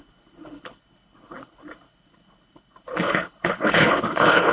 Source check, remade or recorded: remade